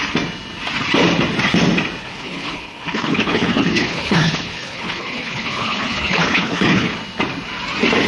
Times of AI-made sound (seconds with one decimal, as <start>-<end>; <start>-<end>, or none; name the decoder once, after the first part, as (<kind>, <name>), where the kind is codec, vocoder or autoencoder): 2.0-6.9 (codec, HILCodec)